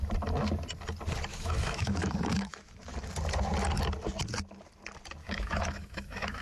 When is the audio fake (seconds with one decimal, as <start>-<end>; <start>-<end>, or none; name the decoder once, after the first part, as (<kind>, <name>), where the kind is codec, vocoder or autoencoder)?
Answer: 1.3-2.8 (autoencoder, DAC-VAE); 5.2-6.4